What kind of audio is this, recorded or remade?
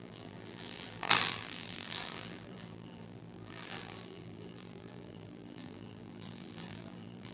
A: remade